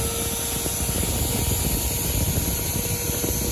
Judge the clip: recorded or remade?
recorded